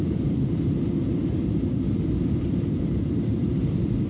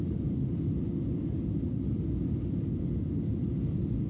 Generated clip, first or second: first